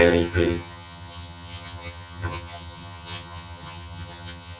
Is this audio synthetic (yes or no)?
yes